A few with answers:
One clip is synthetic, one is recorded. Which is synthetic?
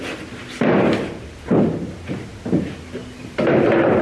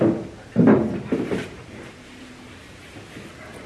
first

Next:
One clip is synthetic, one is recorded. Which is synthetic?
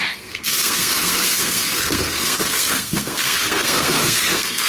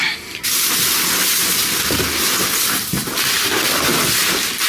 first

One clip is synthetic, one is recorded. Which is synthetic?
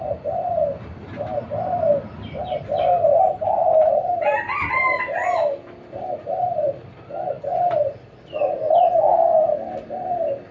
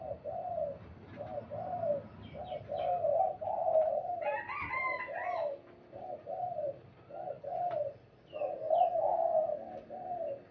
first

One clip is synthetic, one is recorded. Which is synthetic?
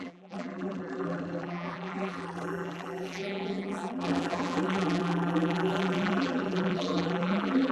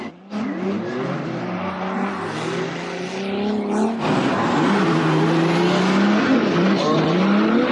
first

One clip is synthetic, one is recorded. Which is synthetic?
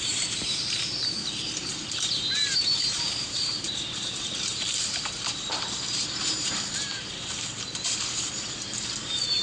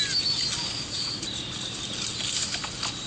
first